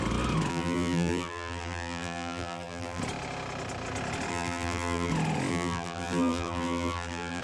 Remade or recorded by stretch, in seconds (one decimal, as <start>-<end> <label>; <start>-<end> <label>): 0.0-0.5 recorded; 0.5-3.0 remade; 3.0-4.3 recorded; 4.3-5.1 remade; 5.1-5.5 recorded; 5.5-7.4 remade